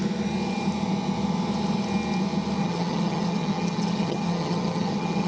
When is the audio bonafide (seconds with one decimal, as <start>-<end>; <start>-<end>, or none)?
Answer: 0.0-2.6